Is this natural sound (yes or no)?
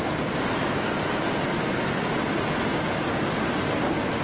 yes